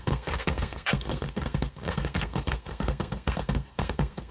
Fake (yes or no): yes